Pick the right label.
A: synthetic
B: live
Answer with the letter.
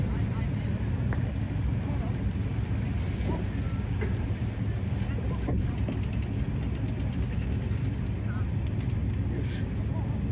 B